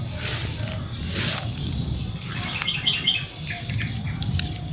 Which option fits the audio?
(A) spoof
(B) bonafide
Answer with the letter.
B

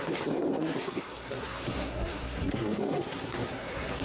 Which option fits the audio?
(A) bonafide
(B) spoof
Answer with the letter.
B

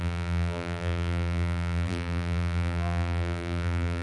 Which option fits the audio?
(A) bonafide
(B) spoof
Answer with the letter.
B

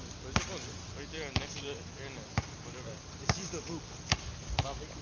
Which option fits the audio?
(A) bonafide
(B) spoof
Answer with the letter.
A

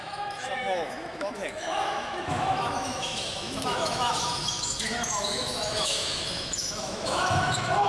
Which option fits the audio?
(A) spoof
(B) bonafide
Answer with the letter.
A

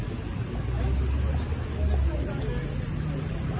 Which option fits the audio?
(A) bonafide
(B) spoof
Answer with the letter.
A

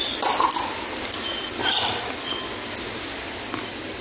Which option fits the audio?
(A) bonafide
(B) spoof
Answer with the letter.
A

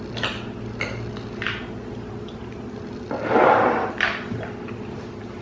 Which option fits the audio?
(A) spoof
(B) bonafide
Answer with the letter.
B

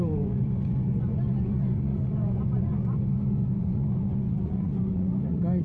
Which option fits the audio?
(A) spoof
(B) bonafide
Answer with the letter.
A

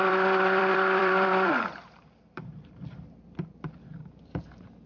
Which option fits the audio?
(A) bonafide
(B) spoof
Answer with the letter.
B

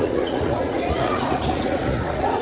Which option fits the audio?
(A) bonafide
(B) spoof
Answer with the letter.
B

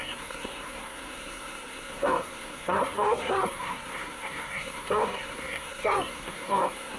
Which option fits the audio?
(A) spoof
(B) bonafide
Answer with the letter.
A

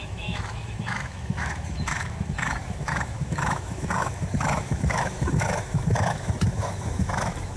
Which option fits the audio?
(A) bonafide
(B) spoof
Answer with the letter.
B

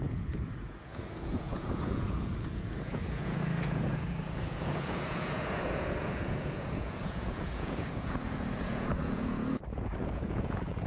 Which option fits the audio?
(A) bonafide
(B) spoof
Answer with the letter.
B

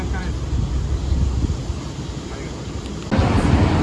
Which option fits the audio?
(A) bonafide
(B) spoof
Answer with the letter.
A